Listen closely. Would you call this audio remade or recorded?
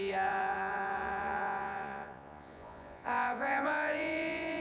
remade